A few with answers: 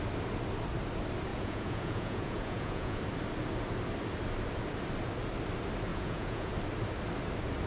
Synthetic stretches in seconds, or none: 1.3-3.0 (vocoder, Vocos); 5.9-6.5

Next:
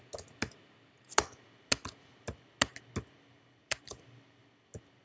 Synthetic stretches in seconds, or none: 3.6-4.4 (vocoder, BigVGAN v2)

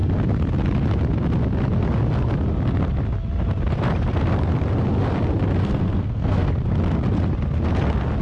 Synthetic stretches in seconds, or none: 5.6-6.5 (codec, SNAC)

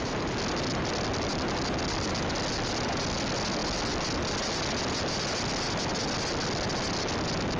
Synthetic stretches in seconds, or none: none

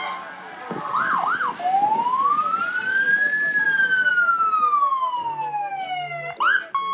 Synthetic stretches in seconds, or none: none

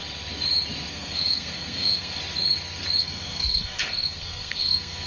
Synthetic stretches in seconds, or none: 0.9-2.2 (codec, SNAC); 3.0-5.1

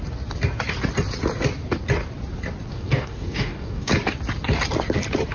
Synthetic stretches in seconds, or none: 2.7-3.9 (codec, DAC)

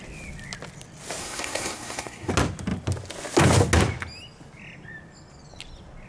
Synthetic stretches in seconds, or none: 1.2-2.3 (codec, SNAC)